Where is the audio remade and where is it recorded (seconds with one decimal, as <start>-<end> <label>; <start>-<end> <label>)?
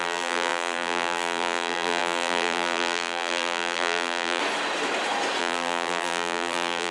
0.0-4.4 remade; 4.4-5.4 recorded; 5.4-6.9 remade